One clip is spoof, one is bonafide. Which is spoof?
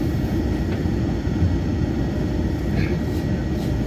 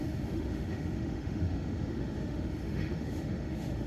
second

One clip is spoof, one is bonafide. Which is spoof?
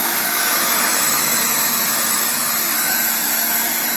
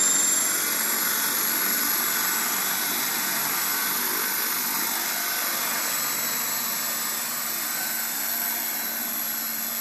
first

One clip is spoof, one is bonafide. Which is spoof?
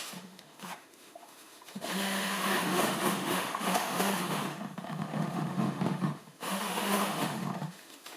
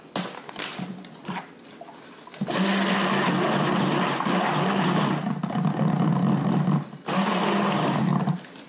first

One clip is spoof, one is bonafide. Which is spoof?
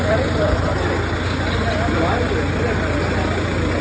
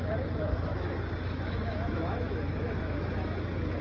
second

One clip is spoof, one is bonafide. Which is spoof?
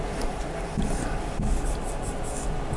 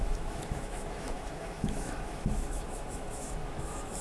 second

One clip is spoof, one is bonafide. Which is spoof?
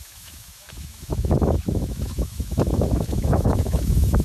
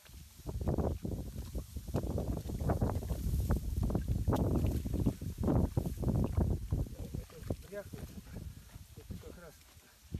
first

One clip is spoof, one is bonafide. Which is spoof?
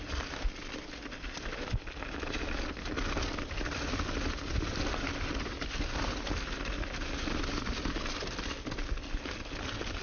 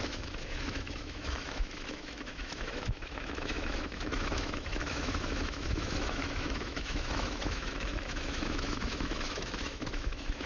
second